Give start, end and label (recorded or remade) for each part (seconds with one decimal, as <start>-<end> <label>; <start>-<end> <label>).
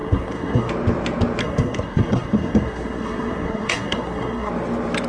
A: 0.0-0.7 remade; 0.7-1.4 recorded; 1.4-4.5 remade; 4.5-5.1 recorded